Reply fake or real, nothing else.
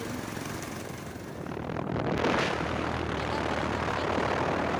real